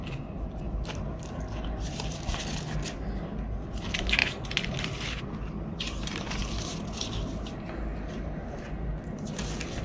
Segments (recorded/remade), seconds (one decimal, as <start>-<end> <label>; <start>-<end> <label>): 0.0-9.8 recorded